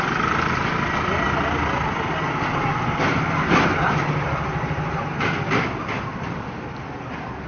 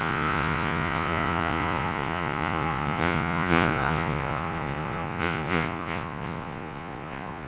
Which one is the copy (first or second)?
second